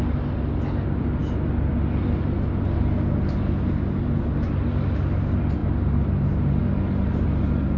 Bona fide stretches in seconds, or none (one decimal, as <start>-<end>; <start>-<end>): 0.0-7.8